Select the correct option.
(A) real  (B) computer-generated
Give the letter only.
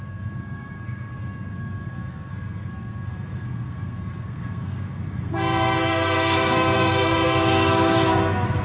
B